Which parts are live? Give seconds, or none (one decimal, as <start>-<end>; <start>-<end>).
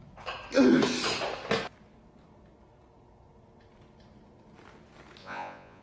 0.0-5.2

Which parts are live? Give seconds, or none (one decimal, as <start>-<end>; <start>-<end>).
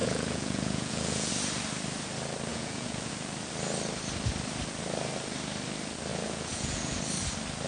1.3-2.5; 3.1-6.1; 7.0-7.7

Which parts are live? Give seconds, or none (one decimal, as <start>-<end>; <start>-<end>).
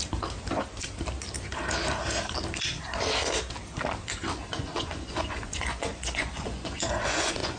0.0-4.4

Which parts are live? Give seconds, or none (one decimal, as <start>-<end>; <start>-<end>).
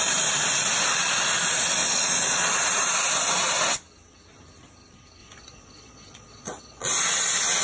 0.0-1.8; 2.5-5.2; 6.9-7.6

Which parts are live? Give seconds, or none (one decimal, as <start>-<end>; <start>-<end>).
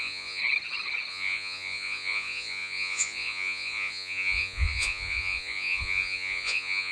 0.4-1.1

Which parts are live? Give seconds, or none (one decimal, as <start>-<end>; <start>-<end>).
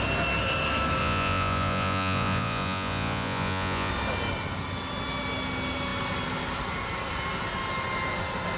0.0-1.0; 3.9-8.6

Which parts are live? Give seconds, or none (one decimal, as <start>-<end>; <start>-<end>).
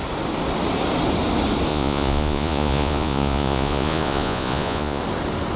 0.0-1.7; 5.0-5.6